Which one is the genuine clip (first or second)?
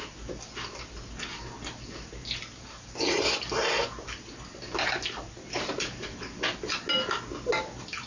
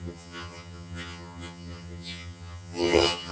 first